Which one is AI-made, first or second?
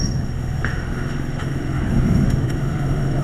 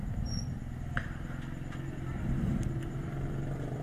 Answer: first